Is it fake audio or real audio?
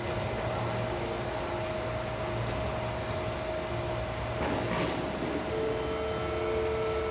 real